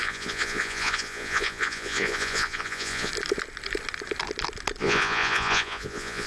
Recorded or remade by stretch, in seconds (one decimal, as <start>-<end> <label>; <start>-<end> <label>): 0.0-3.1 remade; 3.1-4.8 recorded; 4.8-6.3 remade